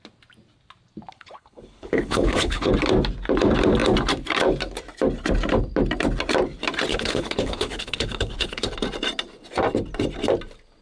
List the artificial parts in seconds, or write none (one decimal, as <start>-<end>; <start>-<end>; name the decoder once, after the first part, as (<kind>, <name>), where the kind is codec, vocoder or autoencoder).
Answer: 1.1-2.7 (codec, HILCodec); 6.9-8.7